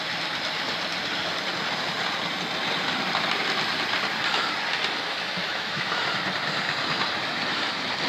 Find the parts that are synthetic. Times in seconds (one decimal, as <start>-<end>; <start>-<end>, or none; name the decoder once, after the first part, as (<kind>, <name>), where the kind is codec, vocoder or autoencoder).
5.4-6.0 (autoencoder, DAC-VAE)